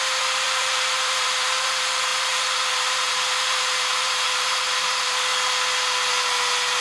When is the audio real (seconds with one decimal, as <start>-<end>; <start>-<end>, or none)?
5.3-6.8